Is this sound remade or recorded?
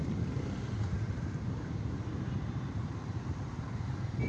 remade